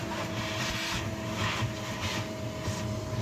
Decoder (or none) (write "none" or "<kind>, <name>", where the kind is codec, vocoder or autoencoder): none